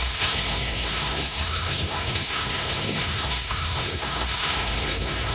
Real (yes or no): no